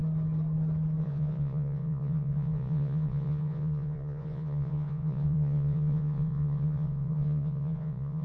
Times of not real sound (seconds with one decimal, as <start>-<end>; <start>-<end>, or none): 1.0-8.2